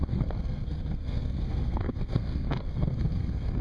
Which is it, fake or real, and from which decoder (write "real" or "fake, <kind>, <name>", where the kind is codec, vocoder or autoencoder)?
fake, codec, SNAC